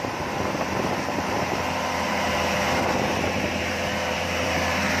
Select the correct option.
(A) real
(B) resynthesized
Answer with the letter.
B